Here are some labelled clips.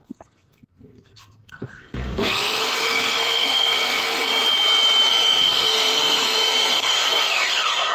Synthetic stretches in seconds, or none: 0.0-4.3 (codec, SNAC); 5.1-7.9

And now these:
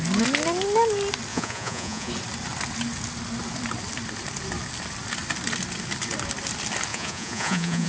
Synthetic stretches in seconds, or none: 1.3-2.1 (vocoder, Vocos); 6.9-7.9

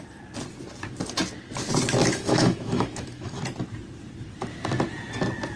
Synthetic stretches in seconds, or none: 2.0-3.4 (autoencoder, DAC-VAE)

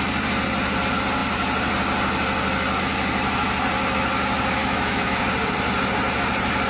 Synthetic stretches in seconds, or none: 4.6-5.2 (autoencoder, DAC-VAE)

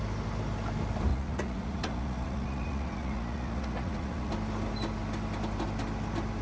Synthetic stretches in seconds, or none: 1.1-4.3 (vocoder, Vocos)

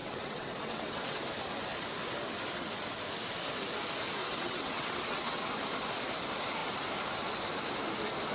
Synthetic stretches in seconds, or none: 0.0-1.2 (vocoder, WaveNeXt); 4.2-5.5

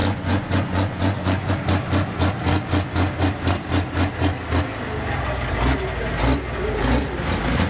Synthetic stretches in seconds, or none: 0.0-1.5 (vocoder, Vocos)

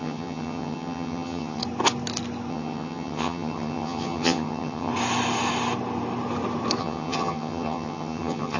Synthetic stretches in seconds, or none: 0.0-1.6 (vocoder, HiFi-GAN); 2.5-4.9; 6.8-8.6